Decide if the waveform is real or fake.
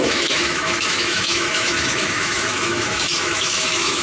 fake